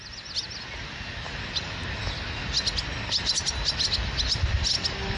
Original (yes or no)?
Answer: yes